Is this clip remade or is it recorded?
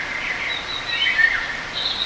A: recorded